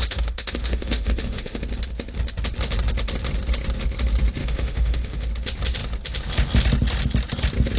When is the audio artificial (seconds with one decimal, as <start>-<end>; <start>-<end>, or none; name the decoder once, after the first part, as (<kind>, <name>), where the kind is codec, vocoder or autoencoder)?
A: 0.0-1.6 (autoencoder, DAC-VAE); 4.4-5.3